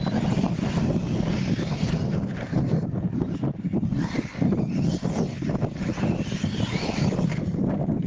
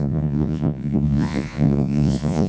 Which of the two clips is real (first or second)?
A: first